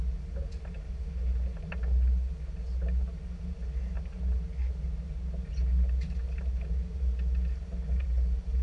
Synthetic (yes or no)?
no